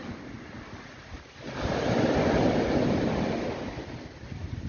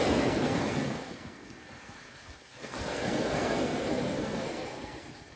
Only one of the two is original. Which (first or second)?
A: first